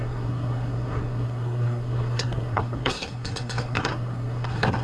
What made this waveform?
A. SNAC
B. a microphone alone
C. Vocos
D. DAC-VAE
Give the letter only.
A